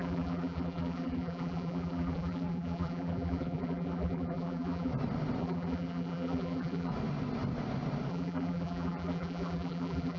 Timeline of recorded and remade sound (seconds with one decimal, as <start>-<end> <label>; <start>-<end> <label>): 0.0-4.9 remade; 4.9-5.4 recorded; 5.4-6.9 remade; 6.9-8.1 recorded; 8.1-10.2 remade